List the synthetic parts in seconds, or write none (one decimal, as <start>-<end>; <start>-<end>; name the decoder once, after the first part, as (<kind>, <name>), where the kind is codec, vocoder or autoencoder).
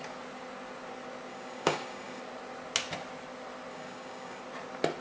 1.3-2.2 (codec, DAC); 3.7-4.4